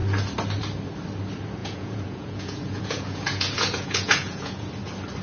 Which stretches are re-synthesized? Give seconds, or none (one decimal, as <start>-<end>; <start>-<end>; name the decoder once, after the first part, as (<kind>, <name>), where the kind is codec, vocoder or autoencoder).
1.6-4.7 (vocoder, Vocos)